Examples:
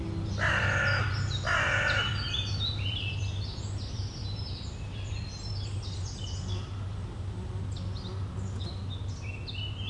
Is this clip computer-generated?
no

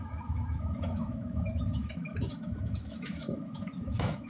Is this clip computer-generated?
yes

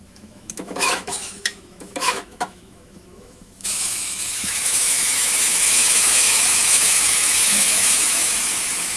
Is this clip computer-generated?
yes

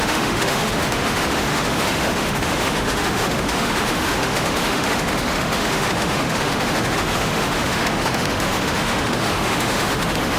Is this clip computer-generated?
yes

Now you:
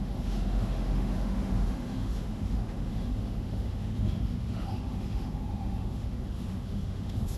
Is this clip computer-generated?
yes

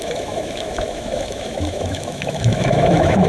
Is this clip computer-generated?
yes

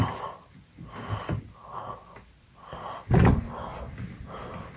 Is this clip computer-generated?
no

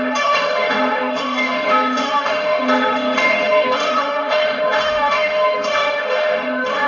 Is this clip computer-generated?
yes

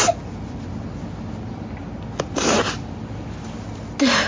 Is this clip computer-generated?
no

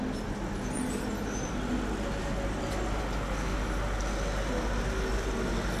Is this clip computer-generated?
no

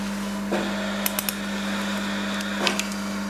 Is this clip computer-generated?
no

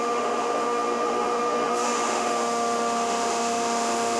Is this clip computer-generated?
yes